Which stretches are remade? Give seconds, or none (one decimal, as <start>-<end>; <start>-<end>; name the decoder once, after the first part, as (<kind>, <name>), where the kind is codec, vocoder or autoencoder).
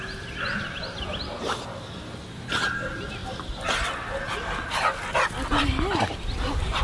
none